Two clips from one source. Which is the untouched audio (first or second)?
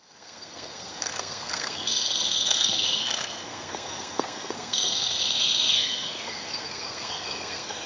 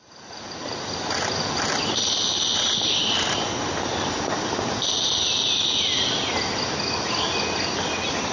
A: second